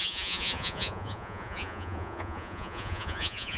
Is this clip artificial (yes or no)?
yes